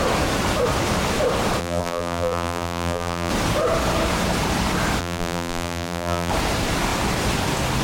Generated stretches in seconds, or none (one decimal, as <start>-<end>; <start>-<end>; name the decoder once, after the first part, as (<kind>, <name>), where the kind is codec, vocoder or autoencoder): 1.6-3.3 (vocoder, BigVGAN v2); 5.0-6.3